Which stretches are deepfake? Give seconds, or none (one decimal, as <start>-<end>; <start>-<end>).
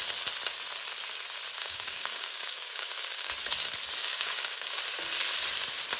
1.6-3.3; 4.0-4.8